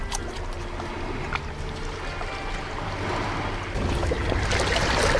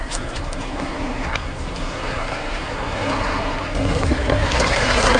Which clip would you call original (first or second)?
first